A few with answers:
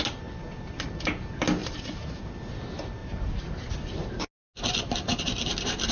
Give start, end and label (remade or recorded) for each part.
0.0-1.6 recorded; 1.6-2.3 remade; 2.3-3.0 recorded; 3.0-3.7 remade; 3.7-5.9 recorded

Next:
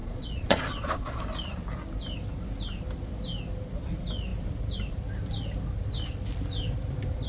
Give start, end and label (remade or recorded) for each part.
0.0-1.2 remade; 1.2-7.3 recorded

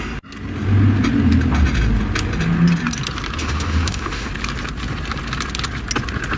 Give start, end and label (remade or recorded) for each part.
0.0-3.4 recorded; 3.4-4.3 remade; 4.3-6.4 recorded